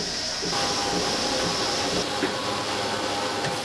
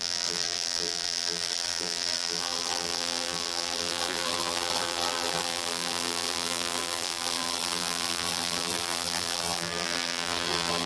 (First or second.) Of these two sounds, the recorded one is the first